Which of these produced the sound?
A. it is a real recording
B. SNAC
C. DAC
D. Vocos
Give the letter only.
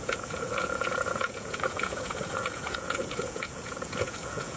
D